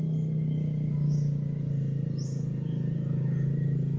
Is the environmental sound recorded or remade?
recorded